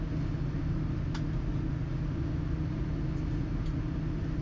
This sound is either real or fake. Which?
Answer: real